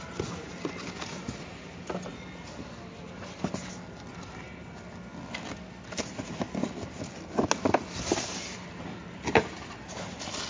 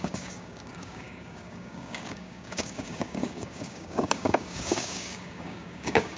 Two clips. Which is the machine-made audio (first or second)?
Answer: second